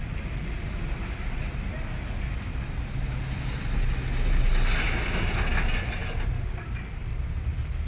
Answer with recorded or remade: recorded